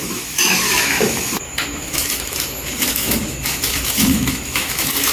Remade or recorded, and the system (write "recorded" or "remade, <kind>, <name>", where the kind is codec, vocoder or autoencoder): remade, autoencoder, DAC-VAE